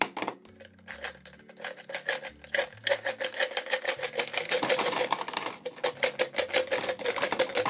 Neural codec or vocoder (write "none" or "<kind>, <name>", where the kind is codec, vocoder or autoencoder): none